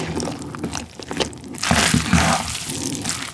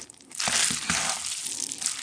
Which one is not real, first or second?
first